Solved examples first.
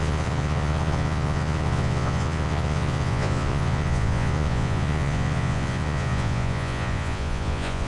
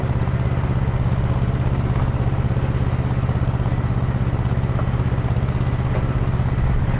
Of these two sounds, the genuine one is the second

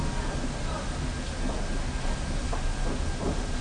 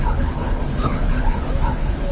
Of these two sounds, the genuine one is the first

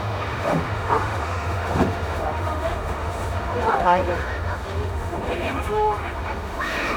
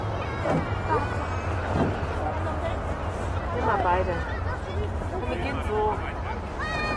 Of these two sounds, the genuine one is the second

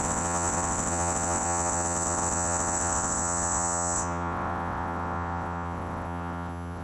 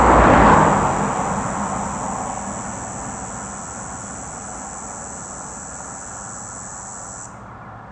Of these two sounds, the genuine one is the second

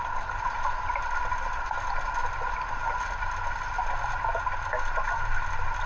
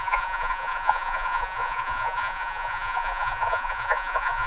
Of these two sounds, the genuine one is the first